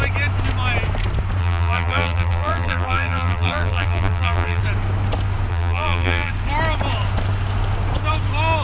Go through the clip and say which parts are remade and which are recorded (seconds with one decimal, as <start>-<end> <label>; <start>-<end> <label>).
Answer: 0.0-1.4 recorded; 1.4-4.6 remade; 4.6-5.5 recorded; 5.5-6.3 remade; 6.3-8.6 recorded